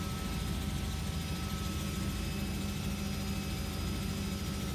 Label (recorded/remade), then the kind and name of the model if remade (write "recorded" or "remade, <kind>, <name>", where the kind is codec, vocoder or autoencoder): recorded